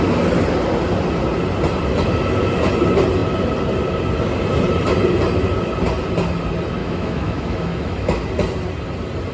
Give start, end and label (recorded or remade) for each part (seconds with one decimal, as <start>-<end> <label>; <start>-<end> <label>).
0.0-6.8 recorded; 6.8-8.2 remade; 8.2-9.3 recorded